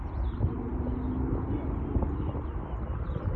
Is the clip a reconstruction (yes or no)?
no